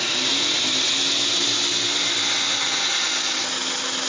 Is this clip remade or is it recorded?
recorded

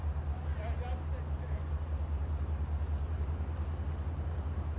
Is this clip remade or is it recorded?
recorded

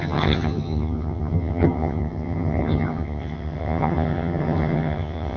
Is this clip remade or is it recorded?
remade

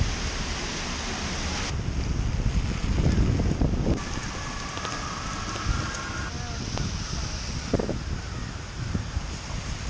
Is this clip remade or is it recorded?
recorded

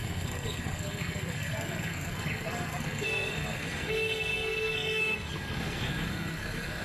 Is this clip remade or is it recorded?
remade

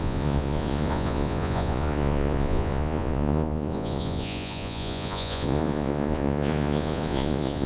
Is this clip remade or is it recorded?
remade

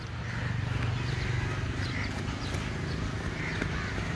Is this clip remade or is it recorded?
recorded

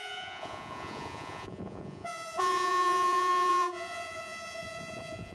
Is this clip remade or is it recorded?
remade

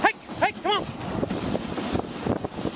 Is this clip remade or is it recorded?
recorded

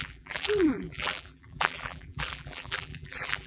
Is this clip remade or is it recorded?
remade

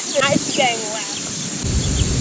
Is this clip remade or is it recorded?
recorded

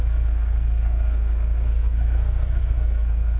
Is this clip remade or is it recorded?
remade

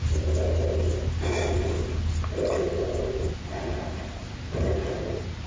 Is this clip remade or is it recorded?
recorded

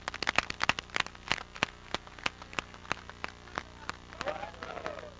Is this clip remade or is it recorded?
recorded